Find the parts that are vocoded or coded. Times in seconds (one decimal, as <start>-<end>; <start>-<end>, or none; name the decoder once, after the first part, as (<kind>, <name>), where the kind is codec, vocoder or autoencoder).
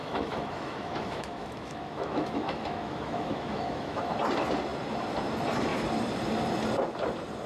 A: 0.0-4.0 (autoencoder, DAC-VAE)